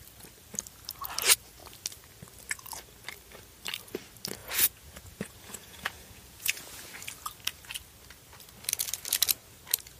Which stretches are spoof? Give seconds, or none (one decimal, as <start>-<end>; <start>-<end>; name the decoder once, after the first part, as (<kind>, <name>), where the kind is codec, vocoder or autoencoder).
4.4-7.0 (vocoder, Vocos)